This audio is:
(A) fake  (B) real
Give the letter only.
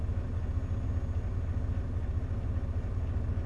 B